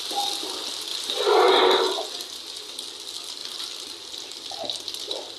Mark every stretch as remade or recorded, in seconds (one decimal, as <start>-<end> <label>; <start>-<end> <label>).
0.0-0.9 recorded; 0.9-1.5 remade; 1.5-3.4 recorded; 3.4-5.4 remade